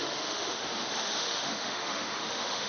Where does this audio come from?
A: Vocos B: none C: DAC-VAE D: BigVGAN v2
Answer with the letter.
C